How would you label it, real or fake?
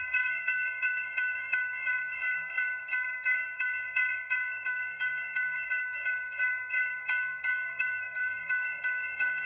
fake